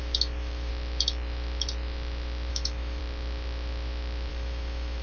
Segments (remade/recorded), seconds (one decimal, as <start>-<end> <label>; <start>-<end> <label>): 0.0-0.7 remade; 0.7-2.5 recorded; 2.5-3.0 remade; 3.0-4.3 recorded; 4.3-5.0 remade

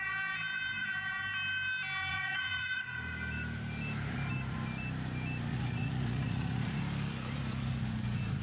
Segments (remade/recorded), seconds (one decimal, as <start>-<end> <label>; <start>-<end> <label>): 0.0-2.1 recorded; 2.1-2.8 remade; 2.8-5.5 recorded; 5.5-6.8 remade; 6.8-8.4 recorded

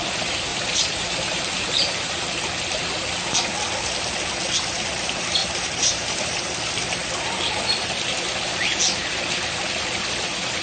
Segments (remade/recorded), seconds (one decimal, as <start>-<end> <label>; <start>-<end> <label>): 0.0-0.5 recorded; 0.5-2.1 remade; 2.1-5.4 recorded; 5.4-6.6 remade; 6.6-10.6 recorded

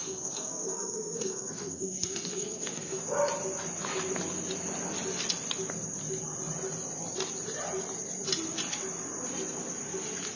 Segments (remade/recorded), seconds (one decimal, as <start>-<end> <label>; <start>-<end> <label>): 0.0-3.0 remade; 3.0-10.4 recorded

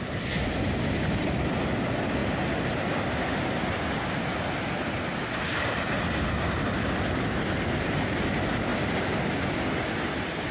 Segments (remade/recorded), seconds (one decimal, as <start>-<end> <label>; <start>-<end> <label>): 0.0-10.5 recorded

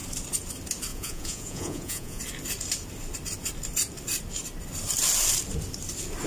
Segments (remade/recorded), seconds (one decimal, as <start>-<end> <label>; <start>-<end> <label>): 0.0-0.9 recorded; 0.9-2.2 remade; 2.2-6.3 recorded